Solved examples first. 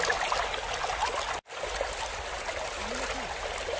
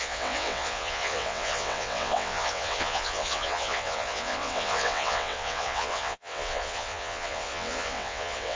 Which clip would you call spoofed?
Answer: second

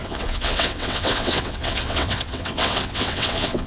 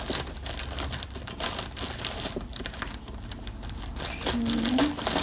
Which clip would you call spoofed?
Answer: first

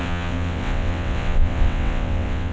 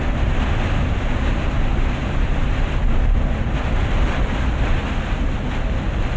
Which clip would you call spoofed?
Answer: first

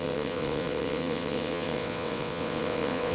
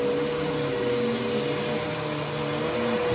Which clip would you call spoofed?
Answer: first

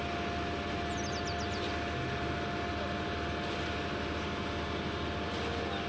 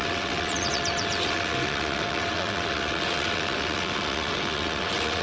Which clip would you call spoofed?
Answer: second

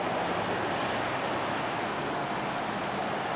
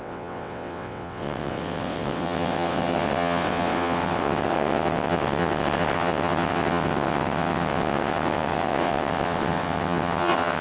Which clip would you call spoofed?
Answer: second